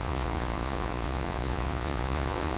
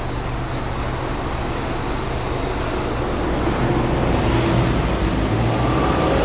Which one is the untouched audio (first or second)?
second